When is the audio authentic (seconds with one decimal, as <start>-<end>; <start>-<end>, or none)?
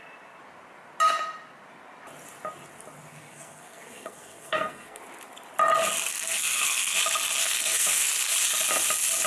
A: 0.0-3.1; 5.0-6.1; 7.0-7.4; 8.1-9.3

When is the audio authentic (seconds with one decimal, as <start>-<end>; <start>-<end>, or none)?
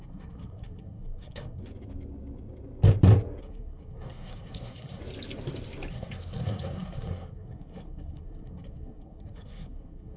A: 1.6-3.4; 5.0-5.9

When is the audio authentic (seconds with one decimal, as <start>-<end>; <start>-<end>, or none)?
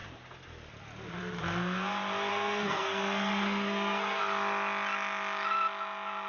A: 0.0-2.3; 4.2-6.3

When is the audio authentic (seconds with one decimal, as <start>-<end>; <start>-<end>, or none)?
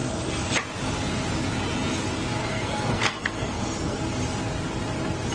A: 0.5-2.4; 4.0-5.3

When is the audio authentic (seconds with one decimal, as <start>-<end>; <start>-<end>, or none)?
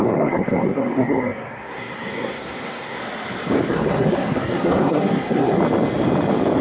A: 3.0-3.7; 5.6-6.6